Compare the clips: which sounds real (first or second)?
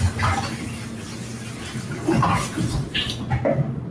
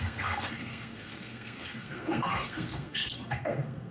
first